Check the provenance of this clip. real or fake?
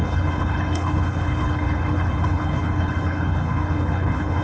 fake